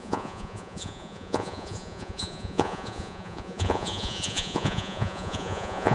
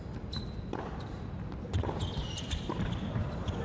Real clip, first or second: second